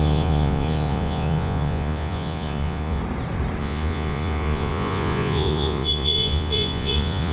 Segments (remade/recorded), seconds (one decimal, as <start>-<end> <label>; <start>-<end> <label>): 0.0-3.0 remade; 3.0-3.6 recorded; 3.6-7.3 remade